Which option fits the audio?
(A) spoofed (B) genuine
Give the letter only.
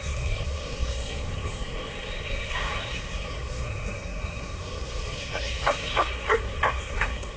A